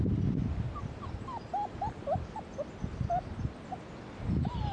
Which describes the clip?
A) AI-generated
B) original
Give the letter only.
B